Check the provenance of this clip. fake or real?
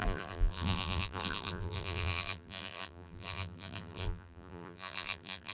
fake